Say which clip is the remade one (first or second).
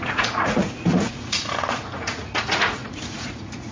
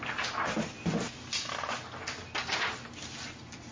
first